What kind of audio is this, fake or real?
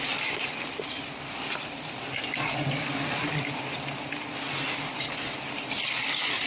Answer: fake